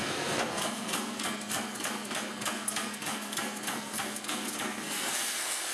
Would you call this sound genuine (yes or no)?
no